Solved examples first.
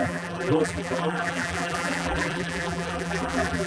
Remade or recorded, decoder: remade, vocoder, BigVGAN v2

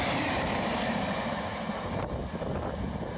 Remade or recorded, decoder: recorded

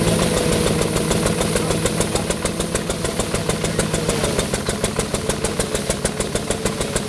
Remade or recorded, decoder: recorded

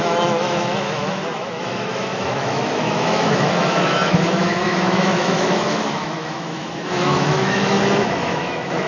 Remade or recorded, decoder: remade, autoencoder, DAC-VAE